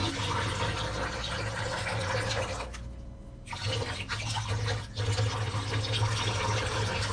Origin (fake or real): real